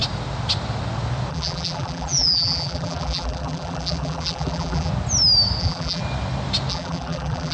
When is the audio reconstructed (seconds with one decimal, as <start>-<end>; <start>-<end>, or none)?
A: 1.3-4.9; 5.6-6.0; 6.7-7.5